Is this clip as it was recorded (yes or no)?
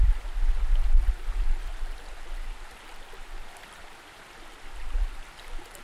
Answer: yes